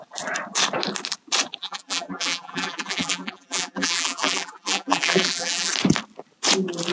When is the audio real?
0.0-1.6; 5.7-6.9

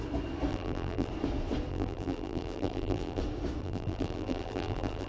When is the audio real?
0.0-0.5; 1.1-1.7; 3.2-3.6

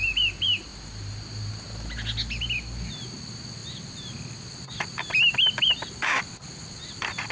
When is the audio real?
0.0-0.7; 1.5-7.3

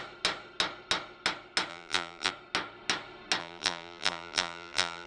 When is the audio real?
0.0-1.7; 2.3-3.4

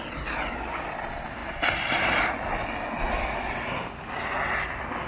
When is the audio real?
0.0-5.1

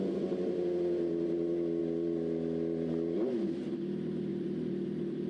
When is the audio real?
0.0-1.8; 3.6-4.3

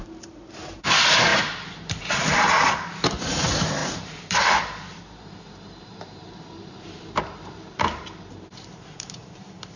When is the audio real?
none